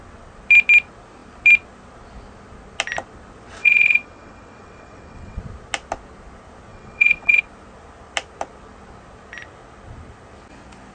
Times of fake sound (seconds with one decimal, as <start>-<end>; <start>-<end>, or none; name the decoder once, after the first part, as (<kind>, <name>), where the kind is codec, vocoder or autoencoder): 3.6-5.4 (vocoder, WaveNeXt); 6.7-7.4